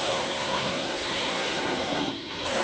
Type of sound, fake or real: fake